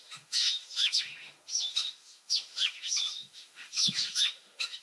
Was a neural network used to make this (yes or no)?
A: yes